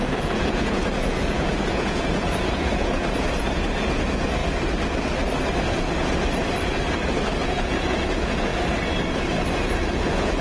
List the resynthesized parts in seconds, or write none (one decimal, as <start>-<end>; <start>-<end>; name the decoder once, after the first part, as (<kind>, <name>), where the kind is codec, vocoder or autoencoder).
0.0-4.4 (vocoder, Vocos); 7.4-8.5; 9.9-10.4